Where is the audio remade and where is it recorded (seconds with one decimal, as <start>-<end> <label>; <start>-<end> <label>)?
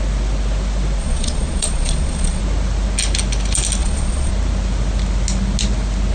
0.0-1.0 recorded; 1.0-2.4 remade; 2.4-3.8 recorded; 3.8-4.3 remade; 4.3-6.1 recorded